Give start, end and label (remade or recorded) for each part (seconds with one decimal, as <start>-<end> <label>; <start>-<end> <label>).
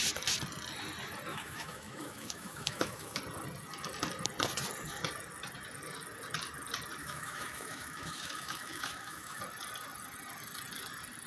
0.0-1.3 recorded; 1.3-3.2 remade; 3.2-7.0 recorded; 7.0-9.4 remade; 9.4-11.3 recorded